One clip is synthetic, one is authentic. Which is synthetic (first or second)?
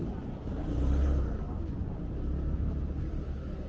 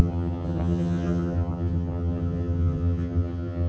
second